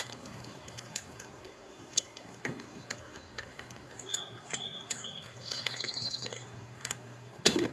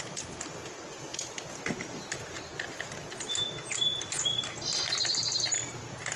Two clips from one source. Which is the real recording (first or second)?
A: second